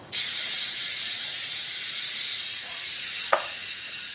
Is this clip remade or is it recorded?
remade